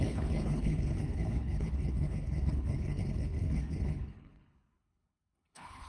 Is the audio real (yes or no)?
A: no